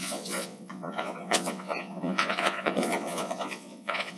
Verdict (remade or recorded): remade